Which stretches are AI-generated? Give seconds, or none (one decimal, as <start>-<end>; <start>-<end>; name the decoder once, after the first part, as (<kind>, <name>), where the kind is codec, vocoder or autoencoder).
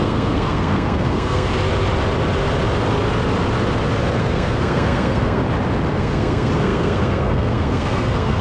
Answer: 0.0-1.5 (codec, SNAC); 4.2-5.4; 5.9-8.4